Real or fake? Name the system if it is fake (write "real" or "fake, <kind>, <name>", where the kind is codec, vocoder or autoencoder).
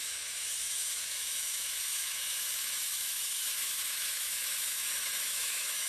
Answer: fake, autoencoder, DAC-VAE